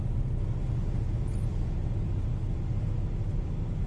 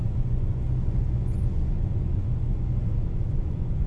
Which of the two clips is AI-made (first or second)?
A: second